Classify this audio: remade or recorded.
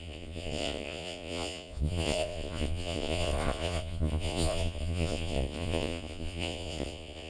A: remade